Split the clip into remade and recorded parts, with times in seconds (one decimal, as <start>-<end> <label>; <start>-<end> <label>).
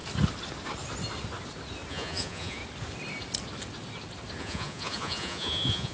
0.0-1.9 recorded; 1.9-2.6 remade; 2.6-4.4 recorded; 4.4-5.9 remade